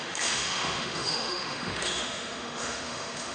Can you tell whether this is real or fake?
fake